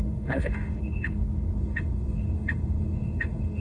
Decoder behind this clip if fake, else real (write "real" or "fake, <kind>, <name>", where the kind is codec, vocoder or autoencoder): fake, autoencoder, DAC-VAE